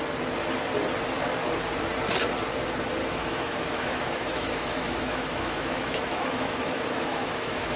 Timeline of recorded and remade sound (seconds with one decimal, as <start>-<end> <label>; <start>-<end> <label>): 0.0-3.0 recorded; 3.0-7.8 remade